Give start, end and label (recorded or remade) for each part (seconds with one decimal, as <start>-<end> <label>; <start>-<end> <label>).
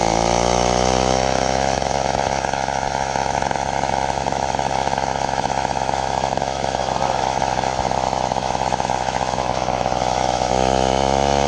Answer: 0.0-11.5 remade